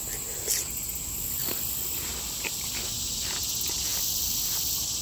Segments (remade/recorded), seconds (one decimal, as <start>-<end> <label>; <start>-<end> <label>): 0.0-5.0 recorded